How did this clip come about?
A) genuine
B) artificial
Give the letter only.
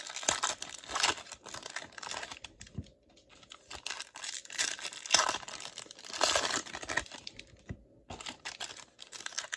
A